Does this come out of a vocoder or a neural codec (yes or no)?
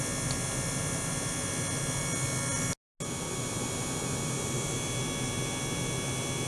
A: no